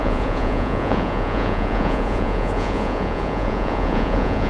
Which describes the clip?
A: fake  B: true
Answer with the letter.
A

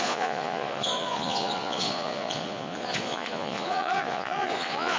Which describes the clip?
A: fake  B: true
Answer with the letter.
A